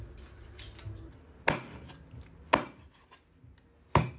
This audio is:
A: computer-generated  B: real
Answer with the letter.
B